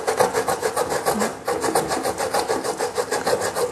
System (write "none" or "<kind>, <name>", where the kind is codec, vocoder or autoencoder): none